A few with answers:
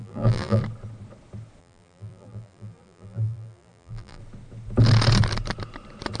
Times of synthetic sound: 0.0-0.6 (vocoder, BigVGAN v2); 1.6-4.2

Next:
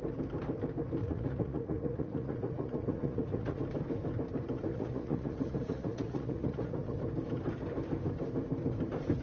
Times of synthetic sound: 1.0-3.6 (vocoder, Vocos); 4.7-7.0

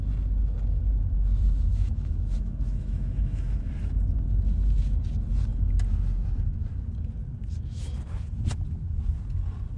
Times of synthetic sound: 1.7-3.7 (autoencoder, DAC-VAE)

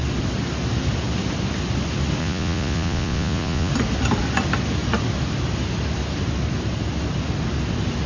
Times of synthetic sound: 2.2-3.7 (vocoder, Vocos)

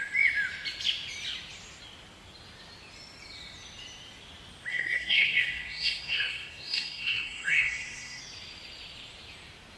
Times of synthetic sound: 4.7-8.2 (codec, SNAC)

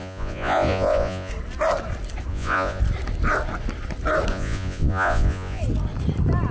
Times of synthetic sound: 0.0-1.3 (vocoder, Vocos); 2.3-2.8; 4.3-5.6